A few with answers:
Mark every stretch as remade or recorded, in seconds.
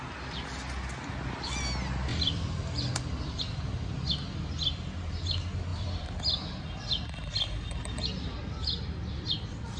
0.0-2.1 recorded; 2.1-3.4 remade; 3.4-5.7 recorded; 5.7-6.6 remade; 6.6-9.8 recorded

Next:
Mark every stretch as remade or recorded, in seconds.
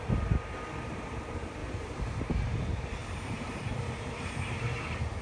0.0-1.6 recorded; 1.6-2.2 remade; 2.2-3.0 recorded; 3.0-3.8 remade; 3.8-5.2 recorded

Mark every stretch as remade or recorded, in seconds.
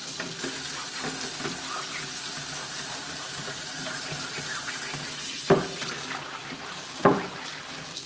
0.0-2.6 recorded; 2.6-4.3 remade; 4.3-6.4 recorded; 6.4-7.5 remade; 7.5-8.1 recorded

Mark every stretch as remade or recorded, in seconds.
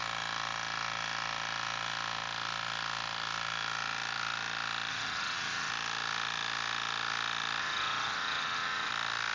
0.0-4.9 recorded; 4.9-5.7 remade; 5.7-7.6 recorded; 7.6-8.9 remade; 8.9-9.3 recorded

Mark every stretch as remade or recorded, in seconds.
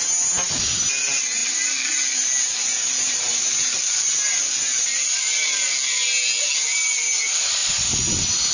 0.0-8.5 recorded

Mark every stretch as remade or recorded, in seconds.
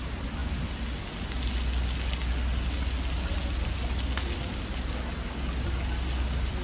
0.0-6.6 recorded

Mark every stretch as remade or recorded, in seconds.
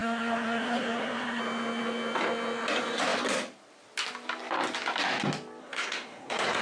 0.0-1.4 remade; 1.4-5.6 recorded; 5.6-6.6 remade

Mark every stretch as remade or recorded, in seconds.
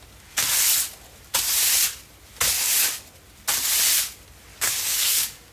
0.0-4.5 recorded; 4.5-5.5 remade